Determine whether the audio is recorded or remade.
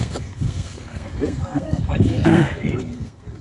remade